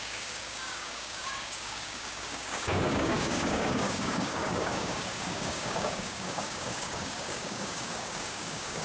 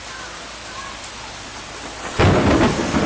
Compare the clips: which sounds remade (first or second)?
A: first